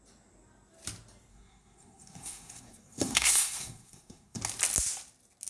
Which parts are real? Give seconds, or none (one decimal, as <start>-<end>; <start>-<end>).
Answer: 0.0-1.3; 4.4-5.5